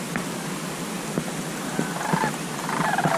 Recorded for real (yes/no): yes